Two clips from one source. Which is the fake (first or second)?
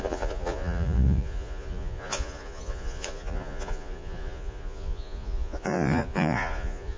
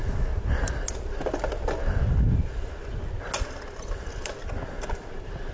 first